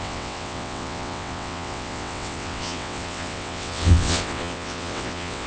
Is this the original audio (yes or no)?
no